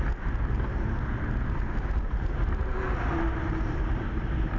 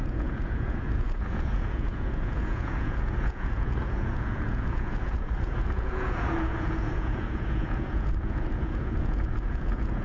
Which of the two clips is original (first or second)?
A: first